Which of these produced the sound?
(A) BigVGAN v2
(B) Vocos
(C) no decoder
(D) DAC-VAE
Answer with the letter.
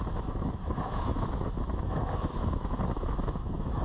D